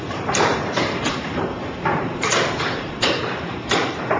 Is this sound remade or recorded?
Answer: remade